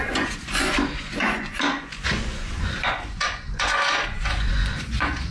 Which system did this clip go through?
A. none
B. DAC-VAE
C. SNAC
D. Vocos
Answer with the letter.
D